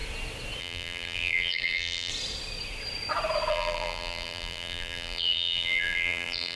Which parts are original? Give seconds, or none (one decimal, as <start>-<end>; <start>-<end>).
0.0-0.6; 2.1-3.5